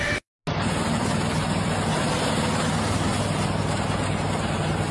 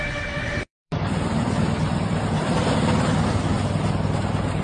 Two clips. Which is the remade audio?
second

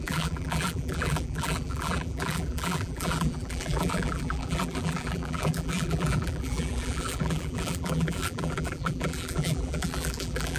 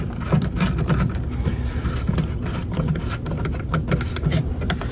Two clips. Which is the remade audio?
first